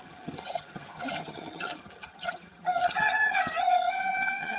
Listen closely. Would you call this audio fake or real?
fake